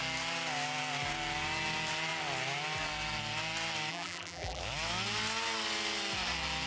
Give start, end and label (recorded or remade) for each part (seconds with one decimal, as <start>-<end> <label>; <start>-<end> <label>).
0.0-3.9 recorded; 3.9-4.6 remade; 4.6-6.7 recorded